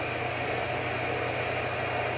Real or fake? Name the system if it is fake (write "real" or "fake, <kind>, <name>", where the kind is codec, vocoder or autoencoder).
real